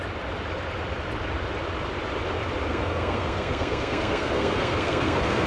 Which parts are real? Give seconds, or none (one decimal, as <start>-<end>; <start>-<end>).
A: 0.0-2.7